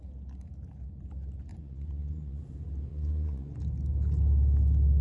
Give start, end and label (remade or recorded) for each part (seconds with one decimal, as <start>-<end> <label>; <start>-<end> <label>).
0.0-1.5 recorded; 1.5-2.4 remade; 2.4-2.9 recorded; 2.9-3.6 remade; 3.6-5.0 recorded